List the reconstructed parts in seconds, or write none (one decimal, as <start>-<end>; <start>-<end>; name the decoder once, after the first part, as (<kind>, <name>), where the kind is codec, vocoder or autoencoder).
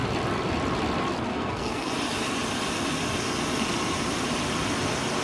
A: 1.3-1.9 (codec, SNAC)